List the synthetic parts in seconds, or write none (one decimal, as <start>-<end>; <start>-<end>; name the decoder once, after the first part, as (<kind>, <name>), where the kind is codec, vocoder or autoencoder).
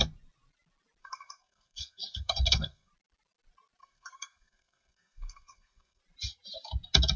1.0-2.9 (codec, SNAC); 3.8-6.0